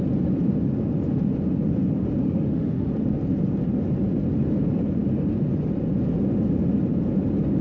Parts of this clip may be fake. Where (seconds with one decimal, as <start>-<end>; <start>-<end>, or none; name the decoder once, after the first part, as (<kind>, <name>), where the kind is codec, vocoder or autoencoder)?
2.2-2.9 (autoencoder, DAC-VAE)